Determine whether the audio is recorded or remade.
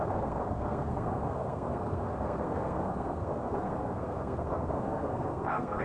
remade